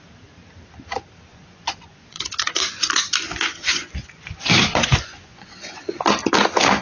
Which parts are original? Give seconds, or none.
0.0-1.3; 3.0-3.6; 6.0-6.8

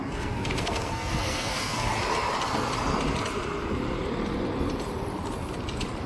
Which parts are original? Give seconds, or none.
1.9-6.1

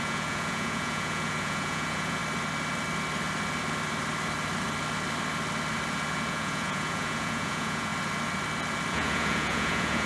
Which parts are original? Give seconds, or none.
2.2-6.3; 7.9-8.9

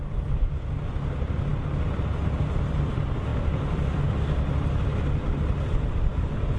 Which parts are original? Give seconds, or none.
0.0-6.6